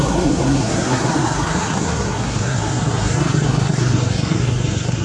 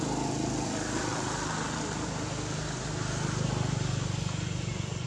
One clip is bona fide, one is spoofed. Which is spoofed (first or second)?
first